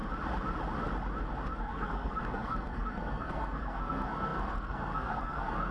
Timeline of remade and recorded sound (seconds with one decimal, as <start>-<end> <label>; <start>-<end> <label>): 0.0-1.6 recorded; 1.6-5.7 remade